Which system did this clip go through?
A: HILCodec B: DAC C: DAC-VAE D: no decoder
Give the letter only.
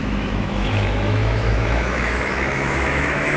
C